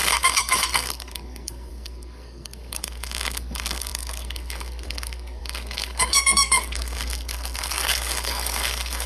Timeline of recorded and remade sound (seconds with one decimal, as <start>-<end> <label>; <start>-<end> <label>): 0.0-9.1 remade